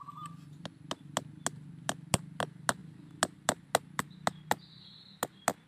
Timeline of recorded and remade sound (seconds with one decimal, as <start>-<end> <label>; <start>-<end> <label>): 0.0-5.7 recorded